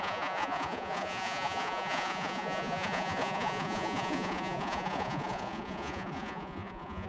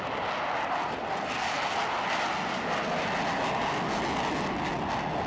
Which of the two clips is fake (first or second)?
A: first